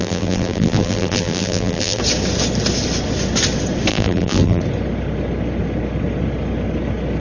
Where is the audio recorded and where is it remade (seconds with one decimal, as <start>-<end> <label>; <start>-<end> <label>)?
0.0-2.0 remade; 2.0-3.9 recorded; 3.9-4.6 remade; 4.6-7.2 recorded